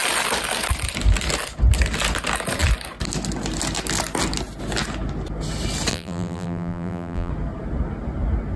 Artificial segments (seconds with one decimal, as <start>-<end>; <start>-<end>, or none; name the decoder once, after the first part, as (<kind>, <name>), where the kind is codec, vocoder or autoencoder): 5.9-7.3 (vocoder, BigVGAN v2)